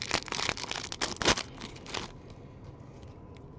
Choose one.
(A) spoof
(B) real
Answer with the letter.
B